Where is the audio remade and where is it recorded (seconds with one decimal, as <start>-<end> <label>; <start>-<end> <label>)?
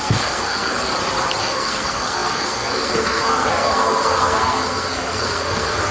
0.0-0.9 remade; 0.9-1.4 recorded; 1.4-5.9 remade